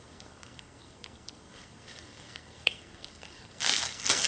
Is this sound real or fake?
fake